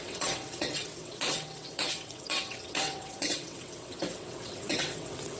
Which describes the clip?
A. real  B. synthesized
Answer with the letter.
B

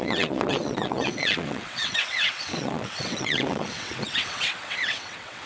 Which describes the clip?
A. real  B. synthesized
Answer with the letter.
B